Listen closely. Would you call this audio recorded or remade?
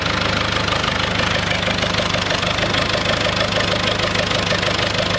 recorded